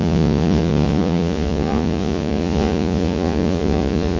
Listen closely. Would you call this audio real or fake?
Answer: fake